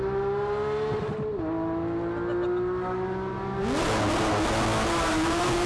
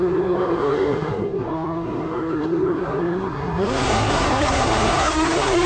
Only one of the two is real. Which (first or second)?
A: first